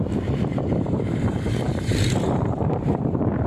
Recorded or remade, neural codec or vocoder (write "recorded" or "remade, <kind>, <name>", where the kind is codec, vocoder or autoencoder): remade, vocoder, BigVGAN v2